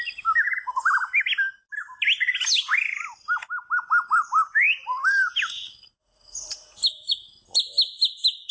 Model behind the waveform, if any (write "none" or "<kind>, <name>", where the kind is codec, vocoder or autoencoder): none